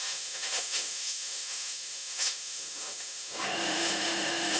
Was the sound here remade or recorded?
remade